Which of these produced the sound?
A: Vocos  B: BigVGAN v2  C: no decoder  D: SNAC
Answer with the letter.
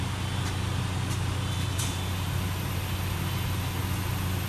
C